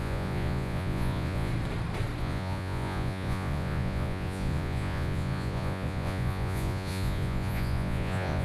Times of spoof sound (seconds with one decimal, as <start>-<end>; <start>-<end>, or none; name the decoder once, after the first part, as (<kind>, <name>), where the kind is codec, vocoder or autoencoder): 0.0-1.5 (vocoder, Vocos); 2.2-8.4